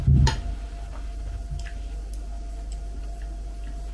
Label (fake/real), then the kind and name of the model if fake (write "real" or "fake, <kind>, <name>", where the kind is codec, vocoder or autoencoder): real